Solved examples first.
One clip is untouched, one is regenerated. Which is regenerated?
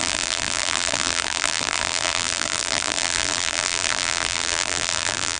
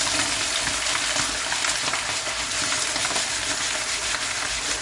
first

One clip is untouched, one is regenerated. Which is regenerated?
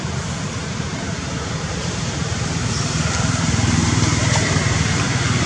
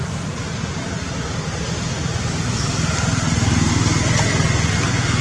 first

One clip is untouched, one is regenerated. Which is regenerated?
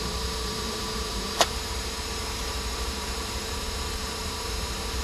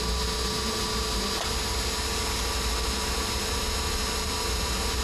first